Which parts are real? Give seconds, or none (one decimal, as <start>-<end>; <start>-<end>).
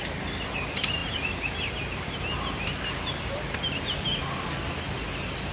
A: 0.0-5.5